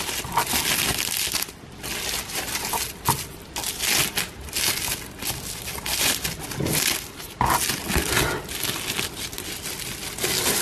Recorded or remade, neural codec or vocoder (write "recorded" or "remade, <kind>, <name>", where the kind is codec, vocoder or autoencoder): recorded